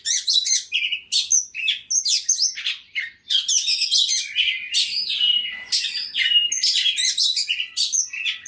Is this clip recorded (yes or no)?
yes